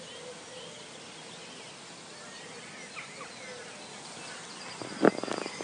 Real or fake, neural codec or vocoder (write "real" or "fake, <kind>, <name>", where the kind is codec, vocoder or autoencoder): real